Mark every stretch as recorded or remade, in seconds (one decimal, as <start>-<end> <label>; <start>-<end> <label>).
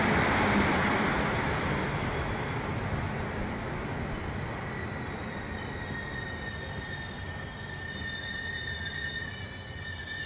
0.0-10.3 recorded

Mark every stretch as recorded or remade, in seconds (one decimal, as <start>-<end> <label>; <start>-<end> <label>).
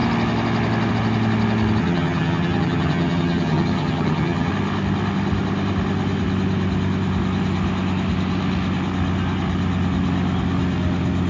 0.0-1.8 recorded; 1.8-4.5 remade; 4.5-11.3 recorded